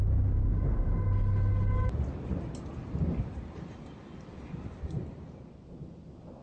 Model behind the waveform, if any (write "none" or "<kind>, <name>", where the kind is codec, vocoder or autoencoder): none